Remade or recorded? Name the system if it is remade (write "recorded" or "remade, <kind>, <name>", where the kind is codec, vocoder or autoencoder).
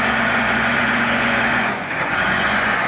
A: remade, vocoder, Vocos